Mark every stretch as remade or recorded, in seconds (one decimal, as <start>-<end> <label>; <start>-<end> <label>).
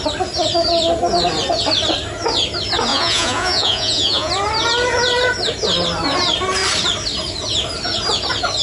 0.0-2.9 recorded; 2.9-4.3 remade; 4.3-8.6 recorded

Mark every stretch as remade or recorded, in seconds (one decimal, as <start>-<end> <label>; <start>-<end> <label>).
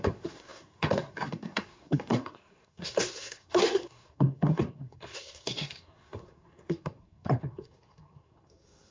0.0-8.9 remade